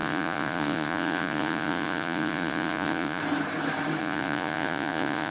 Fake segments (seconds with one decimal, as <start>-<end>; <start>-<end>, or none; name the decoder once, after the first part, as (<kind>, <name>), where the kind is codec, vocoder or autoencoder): 0.0-3.2 (vocoder, Vocos); 4.0-5.3